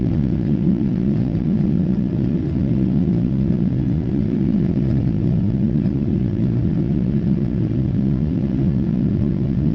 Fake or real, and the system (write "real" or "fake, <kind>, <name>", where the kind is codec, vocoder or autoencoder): fake, vocoder, WaveNeXt